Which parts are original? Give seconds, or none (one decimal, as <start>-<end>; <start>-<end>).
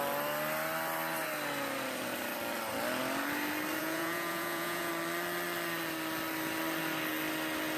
0.0-3.8; 4.9-7.8